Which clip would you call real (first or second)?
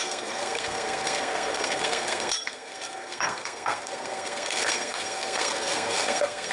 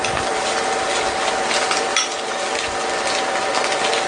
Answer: second